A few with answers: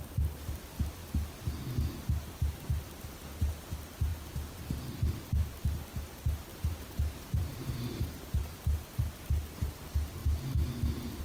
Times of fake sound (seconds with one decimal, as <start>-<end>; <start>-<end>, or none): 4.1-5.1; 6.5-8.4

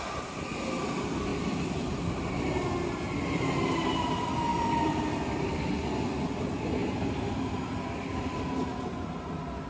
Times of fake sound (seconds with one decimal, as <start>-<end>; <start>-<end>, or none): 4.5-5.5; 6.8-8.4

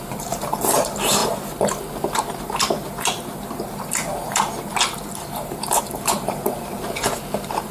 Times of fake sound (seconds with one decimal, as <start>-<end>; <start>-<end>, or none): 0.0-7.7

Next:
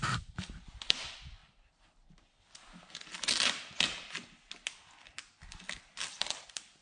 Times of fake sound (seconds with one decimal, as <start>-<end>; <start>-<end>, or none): 0.0-1.4; 5.5-6.8

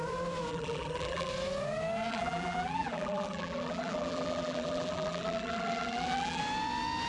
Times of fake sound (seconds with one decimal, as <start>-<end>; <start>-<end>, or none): 0.5-1.3; 2.1-6.4

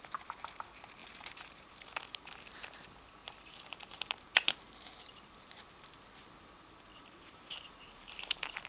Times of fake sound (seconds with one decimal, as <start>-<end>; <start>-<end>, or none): 1.0-1.9; 3.2-5.6; 6.9-8.7

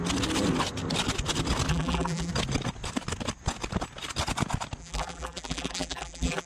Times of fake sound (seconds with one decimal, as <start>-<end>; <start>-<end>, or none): 1.7-2.3; 4.8-6.5